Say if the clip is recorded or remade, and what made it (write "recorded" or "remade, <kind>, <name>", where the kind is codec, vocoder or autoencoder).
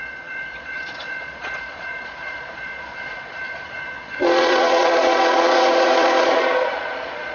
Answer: remade, vocoder, Vocos